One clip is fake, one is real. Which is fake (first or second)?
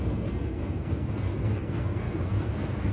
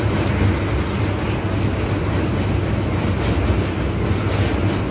first